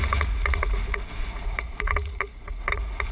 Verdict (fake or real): fake